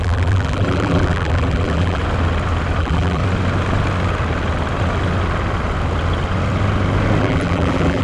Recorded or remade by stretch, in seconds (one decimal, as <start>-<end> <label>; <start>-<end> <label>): 0.0-2.0 remade; 2.0-2.8 recorded; 2.8-3.2 remade; 3.2-7.2 recorded; 7.2-8.0 remade